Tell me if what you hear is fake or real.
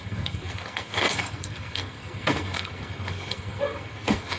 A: fake